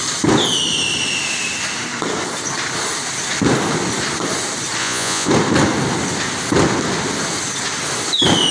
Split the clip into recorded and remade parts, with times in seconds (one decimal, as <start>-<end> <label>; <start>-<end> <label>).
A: 0.0-4.8 recorded; 4.8-5.3 remade; 5.3-8.5 recorded